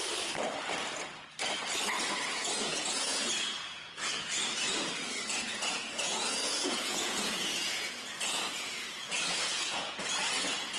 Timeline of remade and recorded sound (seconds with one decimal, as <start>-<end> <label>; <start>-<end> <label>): 0.0-2.4 recorded; 2.4-4.3 remade; 4.3-5.5 recorded; 5.5-10.0 remade; 10.0-10.8 recorded